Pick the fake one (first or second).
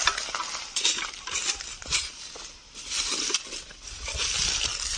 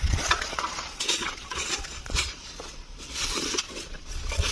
second